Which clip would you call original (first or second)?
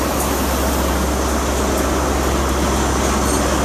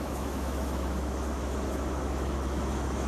first